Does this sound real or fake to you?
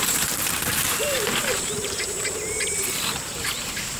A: fake